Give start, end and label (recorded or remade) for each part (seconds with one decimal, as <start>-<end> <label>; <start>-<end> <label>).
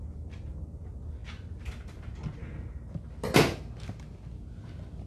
0.0-5.1 recorded